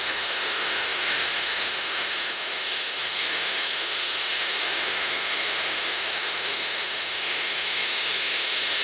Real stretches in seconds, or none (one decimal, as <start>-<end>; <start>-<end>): none